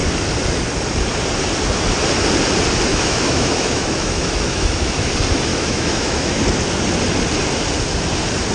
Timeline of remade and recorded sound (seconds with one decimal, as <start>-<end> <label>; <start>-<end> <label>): 0.0-2.9 recorded; 2.9-5.1 remade; 5.1-5.5 recorded; 5.5-6.4 remade; 6.4-8.5 recorded